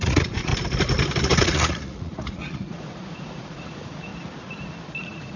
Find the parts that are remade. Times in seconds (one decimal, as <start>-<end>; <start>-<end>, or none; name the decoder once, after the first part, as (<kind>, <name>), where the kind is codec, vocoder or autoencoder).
0.0-0.5 (vocoder, Vocos); 1.4-4.1; 5.0-5.4

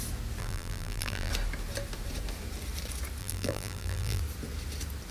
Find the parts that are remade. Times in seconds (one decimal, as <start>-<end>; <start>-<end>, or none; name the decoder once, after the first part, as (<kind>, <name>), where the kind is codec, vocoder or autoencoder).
0.4-1.3 (vocoder, BigVGAN v2); 3.2-4.2

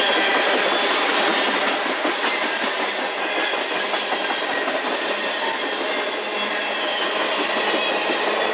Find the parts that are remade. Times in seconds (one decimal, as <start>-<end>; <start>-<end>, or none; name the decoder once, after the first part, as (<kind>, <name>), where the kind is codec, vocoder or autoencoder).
none

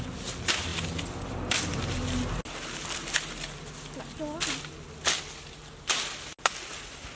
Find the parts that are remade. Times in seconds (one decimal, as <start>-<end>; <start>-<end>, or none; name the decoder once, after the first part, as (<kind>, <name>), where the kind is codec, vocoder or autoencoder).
none